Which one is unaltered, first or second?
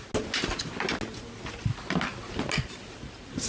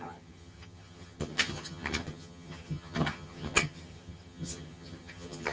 first